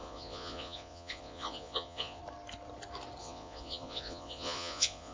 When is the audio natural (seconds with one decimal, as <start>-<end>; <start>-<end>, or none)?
2.2-3.2